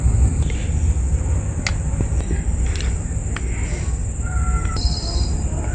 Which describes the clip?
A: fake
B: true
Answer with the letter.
B